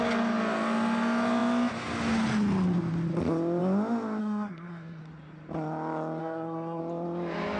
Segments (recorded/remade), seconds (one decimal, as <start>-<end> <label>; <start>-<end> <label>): 0.0-4.2 recorded; 4.2-5.0 remade; 5.0-6.2 recorded; 6.2-6.8 remade; 6.8-7.6 recorded